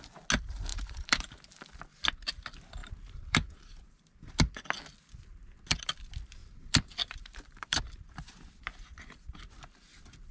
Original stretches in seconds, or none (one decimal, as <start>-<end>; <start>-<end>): 0.0-0.7; 1.3-2.8; 4.3-6.4; 7.8-10.3